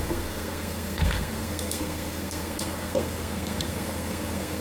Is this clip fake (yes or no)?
yes